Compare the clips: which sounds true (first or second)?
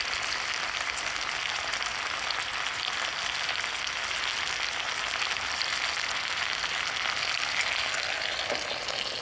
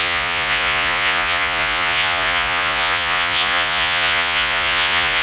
first